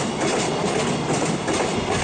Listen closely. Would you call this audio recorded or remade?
recorded